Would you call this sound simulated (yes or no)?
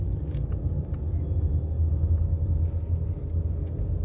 no